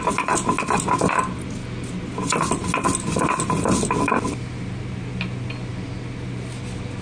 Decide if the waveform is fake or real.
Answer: real